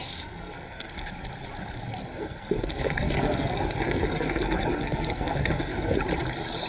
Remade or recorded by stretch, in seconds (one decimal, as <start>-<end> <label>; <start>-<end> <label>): 0.0-0.9 remade; 0.9-2.0 recorded; 2.0-6.0 remade; 6.0-6.7 recorded